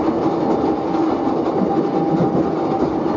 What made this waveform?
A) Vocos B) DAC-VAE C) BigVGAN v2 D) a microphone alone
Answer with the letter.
D